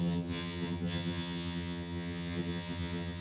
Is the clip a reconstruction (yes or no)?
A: yes